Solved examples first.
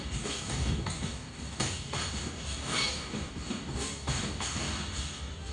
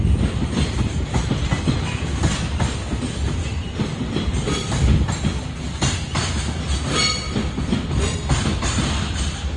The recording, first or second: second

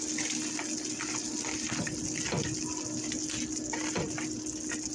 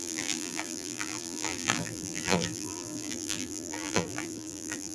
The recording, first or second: first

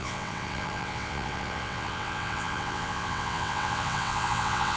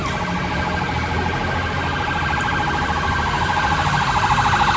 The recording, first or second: second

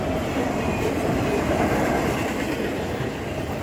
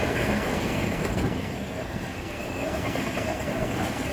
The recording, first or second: first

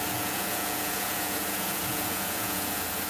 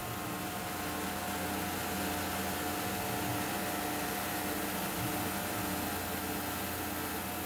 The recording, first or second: second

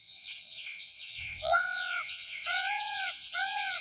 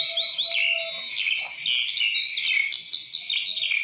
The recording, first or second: second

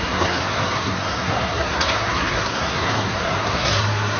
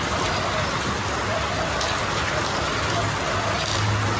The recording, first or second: second